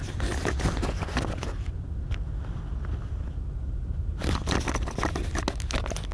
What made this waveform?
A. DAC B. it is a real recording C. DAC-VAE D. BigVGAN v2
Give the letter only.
B